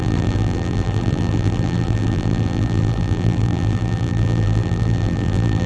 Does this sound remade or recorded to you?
remade